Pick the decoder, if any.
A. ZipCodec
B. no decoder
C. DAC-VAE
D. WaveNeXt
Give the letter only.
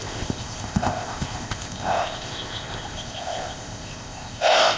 A